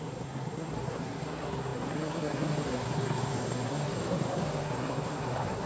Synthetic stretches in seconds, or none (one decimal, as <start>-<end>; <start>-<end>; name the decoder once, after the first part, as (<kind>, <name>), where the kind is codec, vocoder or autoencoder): 0.0-5.7 (codec, SNAC)